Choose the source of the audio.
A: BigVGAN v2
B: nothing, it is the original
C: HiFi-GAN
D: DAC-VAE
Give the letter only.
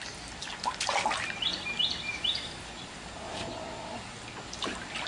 B